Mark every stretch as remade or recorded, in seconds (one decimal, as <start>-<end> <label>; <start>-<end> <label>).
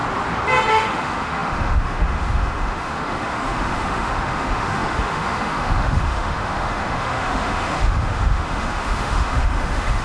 0.0-0.7 recorded; 0.7-10.0 remade